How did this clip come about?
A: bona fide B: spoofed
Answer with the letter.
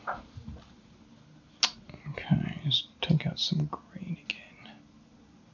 A